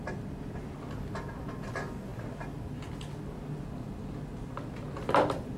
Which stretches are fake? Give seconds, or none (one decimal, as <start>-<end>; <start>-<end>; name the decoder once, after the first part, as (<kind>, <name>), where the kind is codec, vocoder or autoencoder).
none